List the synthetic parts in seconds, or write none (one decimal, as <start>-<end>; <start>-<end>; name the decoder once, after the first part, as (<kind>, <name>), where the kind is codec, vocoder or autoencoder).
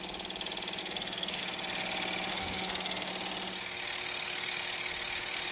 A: 0.8-1.4 (codec, SNAC); 2.3-3.1